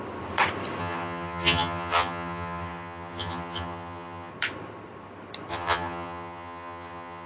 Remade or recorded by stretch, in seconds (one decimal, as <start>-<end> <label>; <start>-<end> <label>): 0.0-0.8 recorded; 0.8-4.3 remade; 4.3-5.5 recorded; 5.5-7.3 remade